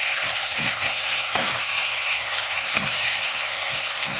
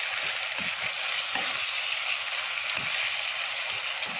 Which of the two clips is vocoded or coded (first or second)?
first